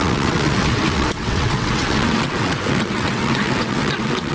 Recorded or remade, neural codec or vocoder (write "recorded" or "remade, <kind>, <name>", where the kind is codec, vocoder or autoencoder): remade, vocoder, WaveNeXt